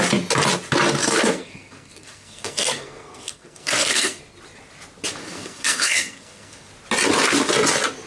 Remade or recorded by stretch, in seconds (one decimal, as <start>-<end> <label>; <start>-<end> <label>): 0.0-1.0 recorded; 1.0-4.2 remade; 4.2-5.2 recorded; 5.2-6.7 remade; 6.7-8.1 recorded